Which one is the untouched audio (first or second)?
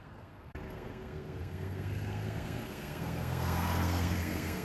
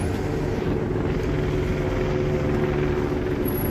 second